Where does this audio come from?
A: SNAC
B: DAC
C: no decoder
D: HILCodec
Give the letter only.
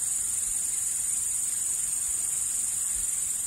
C